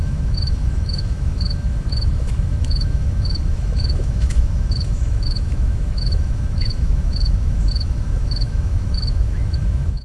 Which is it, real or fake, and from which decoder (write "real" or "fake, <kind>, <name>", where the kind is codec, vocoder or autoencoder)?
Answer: fake, autoencoder, DAC-VAE